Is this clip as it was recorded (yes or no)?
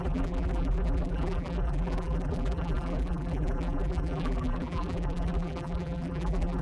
no